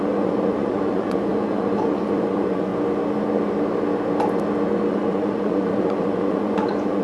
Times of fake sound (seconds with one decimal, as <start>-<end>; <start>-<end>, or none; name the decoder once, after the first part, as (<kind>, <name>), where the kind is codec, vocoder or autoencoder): 0.0-2.7 (vocoder, Vocos); 4.9-7.0